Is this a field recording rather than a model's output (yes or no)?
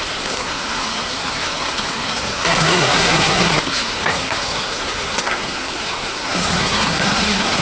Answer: no